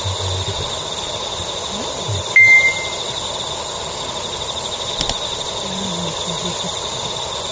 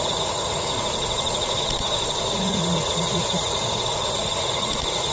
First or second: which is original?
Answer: first